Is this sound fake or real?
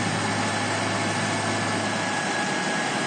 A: real